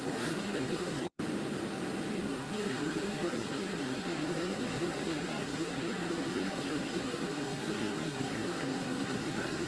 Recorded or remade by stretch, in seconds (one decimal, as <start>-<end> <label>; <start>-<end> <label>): 0.0-1.2 remade; 1.2-2.1 recorded; 2.1-9.7 remade

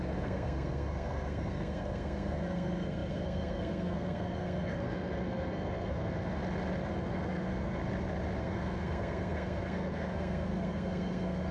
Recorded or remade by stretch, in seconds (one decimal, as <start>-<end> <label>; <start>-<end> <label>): 0.0-6.4 remade; 6.4-6.9 recorded; 6.9-7.8 remade; 7.8-8.4 recorded; 8.4-11.5 remade

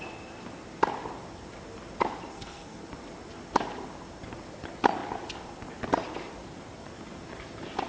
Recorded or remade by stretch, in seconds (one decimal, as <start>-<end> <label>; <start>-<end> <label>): 0.0-2.3 recorded; 2.3-2.8 remade; 2.8-7.9 recorded

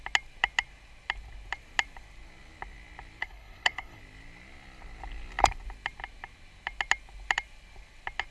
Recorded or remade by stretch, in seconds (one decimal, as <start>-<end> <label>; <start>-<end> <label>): 0.0-3.2 recorded; 3.2-4.0 remade; 4.0-8.3 recorded

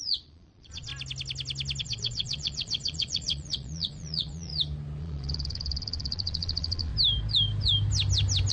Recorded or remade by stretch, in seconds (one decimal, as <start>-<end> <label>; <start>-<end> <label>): 0.0-0.9 remade; 0.9-1.8 recorded; 1.8-4.5 remade; 4.5-5.0 recorded; 5.0-6.9 remade; 6.9-8.5 recorded

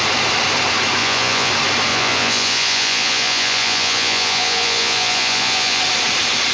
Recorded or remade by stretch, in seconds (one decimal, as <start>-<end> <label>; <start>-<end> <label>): 0.0-1.0 recorded; 1.0-1.5 remade; 1.5-1.9 recorded; 1.9-5.8 remade; 5.8-6.5 recorded